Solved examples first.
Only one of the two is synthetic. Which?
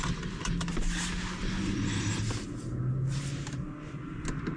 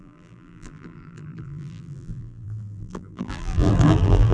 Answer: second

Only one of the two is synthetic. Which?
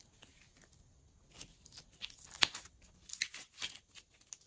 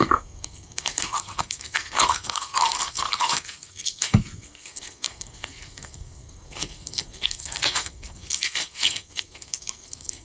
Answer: second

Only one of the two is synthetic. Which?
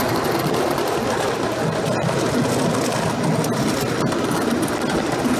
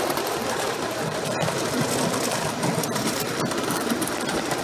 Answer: second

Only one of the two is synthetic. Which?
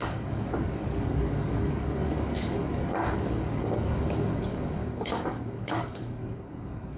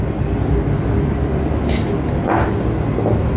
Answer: first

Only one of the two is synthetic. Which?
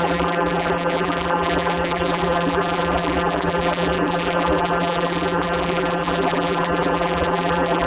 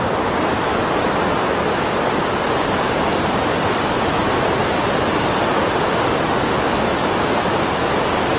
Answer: first